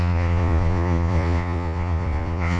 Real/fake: fake